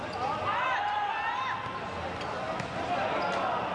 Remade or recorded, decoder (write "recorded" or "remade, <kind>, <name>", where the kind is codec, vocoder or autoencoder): recorded